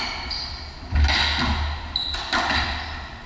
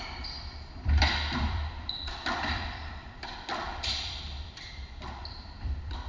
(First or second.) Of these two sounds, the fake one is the second